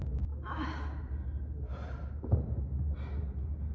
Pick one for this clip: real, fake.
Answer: real